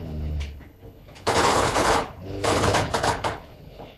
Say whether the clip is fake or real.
fake